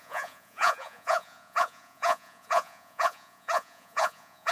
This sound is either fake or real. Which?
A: fake